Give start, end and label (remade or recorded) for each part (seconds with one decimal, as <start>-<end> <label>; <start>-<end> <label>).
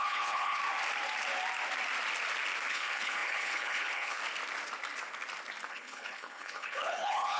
0.0-0.6 remade; 0.6-2.7 recorded; 2.7-4.2 remade; 4.2-5.7 recorded; 5.7-7.4 remade